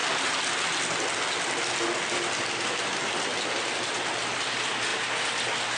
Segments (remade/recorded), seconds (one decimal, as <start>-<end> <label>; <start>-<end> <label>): 0.0-5.8 recorded